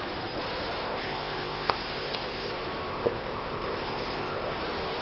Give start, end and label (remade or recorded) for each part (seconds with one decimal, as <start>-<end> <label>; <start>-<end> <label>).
0.0-0.8 recorded; 0.8-2.5 remade; 2.5-2.9 recorded; 2.9-4.6 remade; 4.6-5.0 recorded